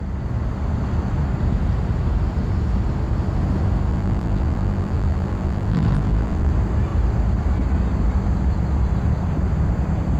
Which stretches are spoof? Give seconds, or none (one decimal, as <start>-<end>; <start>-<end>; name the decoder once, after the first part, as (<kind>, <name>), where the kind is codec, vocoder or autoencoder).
3.9-6.5 (vocoder, BigVGAN v2)